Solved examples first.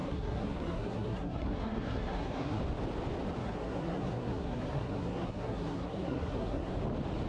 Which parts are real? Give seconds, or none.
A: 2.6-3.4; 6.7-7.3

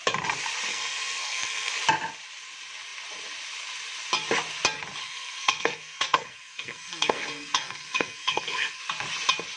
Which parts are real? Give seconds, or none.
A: 0.0-0.7; 1.7-5.0; 8.8-9.6